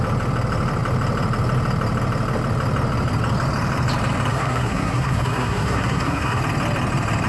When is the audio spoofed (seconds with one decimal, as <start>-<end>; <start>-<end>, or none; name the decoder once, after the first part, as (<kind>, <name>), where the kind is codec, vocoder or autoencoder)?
4.3-6.4 (codec, SNAC)